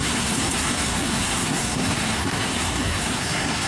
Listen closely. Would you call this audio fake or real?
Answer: fake